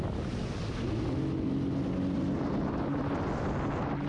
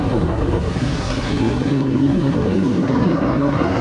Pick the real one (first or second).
first